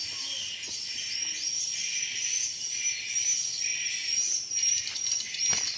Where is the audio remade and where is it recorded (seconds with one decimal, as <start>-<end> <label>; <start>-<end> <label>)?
0.0-5.8 recorded

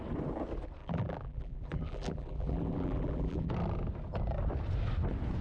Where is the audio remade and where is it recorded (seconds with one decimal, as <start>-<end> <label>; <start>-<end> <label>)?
0.0-0.8 recorded; 0.8-3.5 remade; 3.5-5.4 recorded

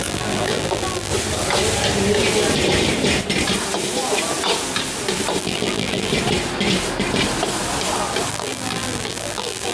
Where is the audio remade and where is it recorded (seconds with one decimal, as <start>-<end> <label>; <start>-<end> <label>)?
0.0-1.1 remade; 1.1-5.4 recorded; 5.4-6.1 remade; 6.1-8.3 recorded; 8.3-9.7 remade